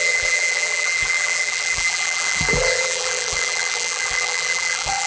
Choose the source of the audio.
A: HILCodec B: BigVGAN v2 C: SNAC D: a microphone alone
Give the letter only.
B